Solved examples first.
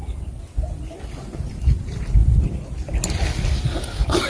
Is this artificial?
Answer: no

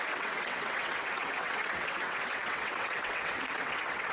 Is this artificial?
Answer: yes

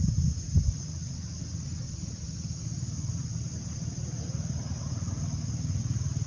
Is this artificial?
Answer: no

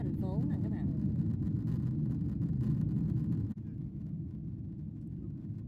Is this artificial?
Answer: no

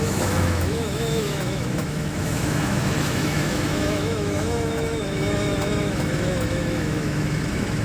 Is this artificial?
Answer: yes